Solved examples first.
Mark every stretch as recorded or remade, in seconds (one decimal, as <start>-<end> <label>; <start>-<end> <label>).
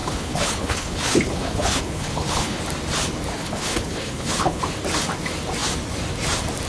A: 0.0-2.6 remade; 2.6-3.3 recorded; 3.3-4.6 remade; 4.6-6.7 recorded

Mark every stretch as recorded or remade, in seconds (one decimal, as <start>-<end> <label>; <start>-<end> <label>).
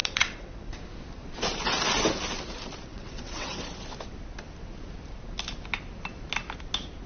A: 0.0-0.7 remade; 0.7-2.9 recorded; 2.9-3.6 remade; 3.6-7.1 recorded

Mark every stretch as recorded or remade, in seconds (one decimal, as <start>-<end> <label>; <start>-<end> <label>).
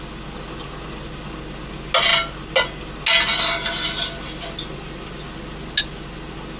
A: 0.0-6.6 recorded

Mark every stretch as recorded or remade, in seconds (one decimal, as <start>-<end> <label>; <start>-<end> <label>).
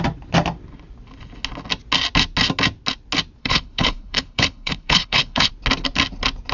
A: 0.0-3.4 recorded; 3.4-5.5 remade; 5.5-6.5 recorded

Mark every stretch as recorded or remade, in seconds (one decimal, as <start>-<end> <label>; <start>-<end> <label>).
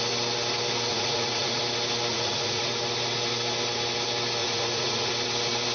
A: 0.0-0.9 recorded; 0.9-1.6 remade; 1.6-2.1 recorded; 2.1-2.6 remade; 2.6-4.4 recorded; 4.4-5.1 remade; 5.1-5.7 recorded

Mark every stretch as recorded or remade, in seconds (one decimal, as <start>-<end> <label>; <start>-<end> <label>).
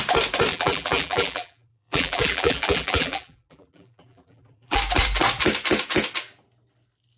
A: 0.0-0.5 recorded; 0.5-4.8 remade; 4.8-7.2 recorded